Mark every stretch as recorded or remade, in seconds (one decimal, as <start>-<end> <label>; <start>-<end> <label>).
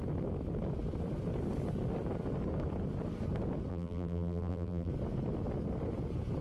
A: 0.0-3.7 recorded; 3.7-4.9 remade; 4.9-6.4 recorded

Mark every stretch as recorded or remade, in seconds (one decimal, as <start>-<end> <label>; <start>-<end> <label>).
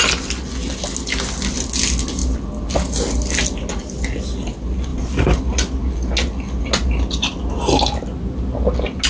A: 0.0-4.9 recorded; 4.9-5.4 remade; 5.4-9.1 recorded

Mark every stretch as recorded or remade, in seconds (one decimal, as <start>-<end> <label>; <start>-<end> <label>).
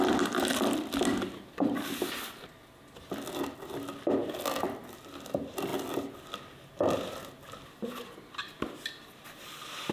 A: 0.0-9.9 recorded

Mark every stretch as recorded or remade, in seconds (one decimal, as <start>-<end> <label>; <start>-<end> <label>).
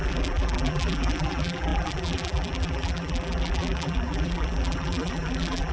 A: 0.0-5.7 remade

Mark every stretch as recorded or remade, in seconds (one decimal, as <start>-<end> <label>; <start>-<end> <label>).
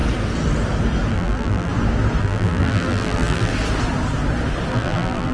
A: 0.0-1.1 recorded; 1.1-1.7 remade; 1.7-2.2 recorded; 2.2-3.5 remade; 3.5-4.7 recorded; 4.7-5.3 remade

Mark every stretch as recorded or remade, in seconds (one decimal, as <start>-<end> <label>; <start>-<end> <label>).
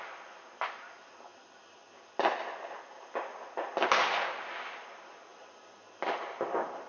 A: 0.0-1.3 remade; 1.3-4.7 recorded; 4.7-5.3 remade; 5.3-6.1 recorded; 6.1-6.9 remade